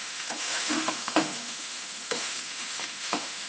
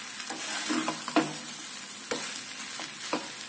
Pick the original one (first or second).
second